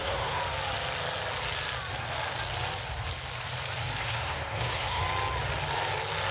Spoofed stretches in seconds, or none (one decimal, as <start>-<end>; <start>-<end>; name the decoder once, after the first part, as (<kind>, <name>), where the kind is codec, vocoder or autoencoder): 0.0-0.4 (codec, SNAC); 4.0-5.0